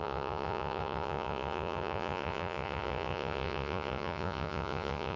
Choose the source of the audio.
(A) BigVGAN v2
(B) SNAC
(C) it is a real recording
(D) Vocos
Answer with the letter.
D